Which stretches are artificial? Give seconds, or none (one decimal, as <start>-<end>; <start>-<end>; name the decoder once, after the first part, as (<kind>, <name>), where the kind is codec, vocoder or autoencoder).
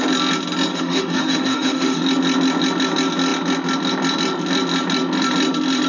0.7-2.0 (autoencoder, DAC-VAE)